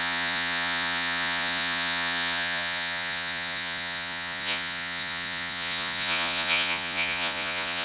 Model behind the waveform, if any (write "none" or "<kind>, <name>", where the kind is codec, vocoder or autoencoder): vocoder, Vocos